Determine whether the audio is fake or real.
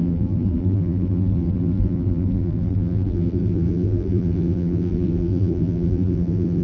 fake